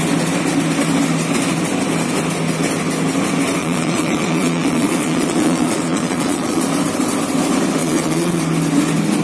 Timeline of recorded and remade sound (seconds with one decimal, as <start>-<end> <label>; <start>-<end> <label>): 0.0-3.6 recorded; 3.6-6.6 remade; 6.6-7.8 recorded; 7.8-8.4 remade; 8.4-9.2 recorded